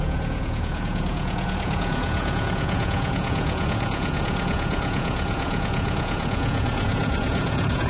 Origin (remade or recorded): remade